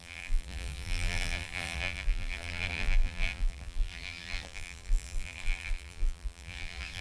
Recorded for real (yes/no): no